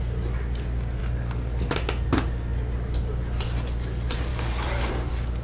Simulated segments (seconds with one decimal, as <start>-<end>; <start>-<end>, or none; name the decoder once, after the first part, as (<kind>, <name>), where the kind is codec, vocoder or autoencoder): 1.0-1.7 (codec, DAC); 4.3-4.9